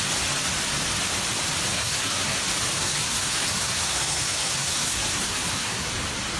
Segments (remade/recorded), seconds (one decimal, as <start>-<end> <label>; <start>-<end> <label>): 0.0-1.7 recorded; 1.7-2.4 remade; 2.4-2.8 recorded; 2.8-5.9 remade; 5.9-6.4 recorded